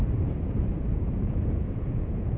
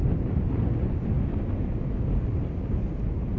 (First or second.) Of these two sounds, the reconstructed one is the first